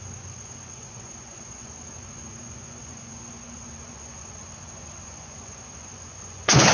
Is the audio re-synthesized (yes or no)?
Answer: yes